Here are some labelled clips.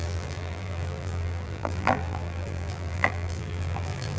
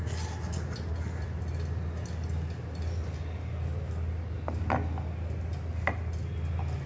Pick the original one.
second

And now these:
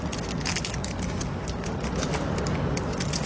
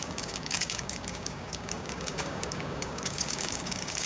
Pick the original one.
first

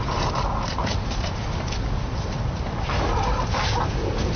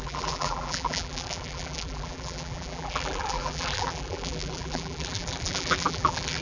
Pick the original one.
first